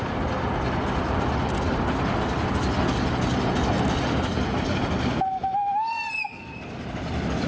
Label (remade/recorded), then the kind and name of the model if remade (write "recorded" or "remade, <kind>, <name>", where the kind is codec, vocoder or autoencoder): recorded